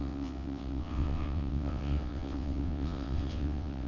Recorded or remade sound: remade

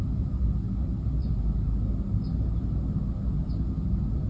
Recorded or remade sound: recorded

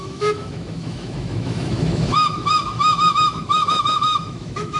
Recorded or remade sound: remade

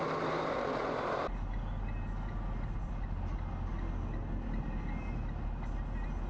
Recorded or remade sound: recorded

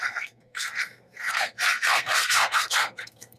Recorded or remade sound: remade